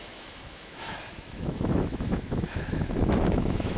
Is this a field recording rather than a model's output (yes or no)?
no